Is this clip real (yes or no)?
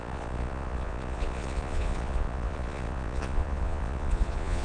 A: no